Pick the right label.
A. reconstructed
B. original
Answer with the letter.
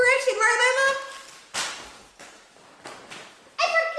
B